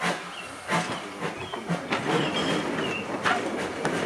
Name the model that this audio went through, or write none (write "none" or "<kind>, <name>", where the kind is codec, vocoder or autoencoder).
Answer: none